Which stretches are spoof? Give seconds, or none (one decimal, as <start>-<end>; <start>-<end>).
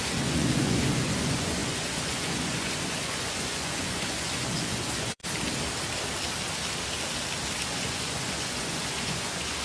0.0-5.2; 7.7-9.6